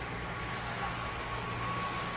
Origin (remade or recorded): recorded